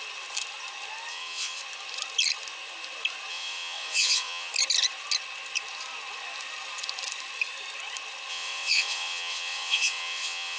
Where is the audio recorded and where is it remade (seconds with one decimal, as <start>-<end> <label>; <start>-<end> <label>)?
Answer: 0.0-1.1 recorded; 1.1-1.6 remade; 1.6-3.3 recorded; 3.3-4.5 remade; 4.5-8.3 recorded; 8.3-10.6 remade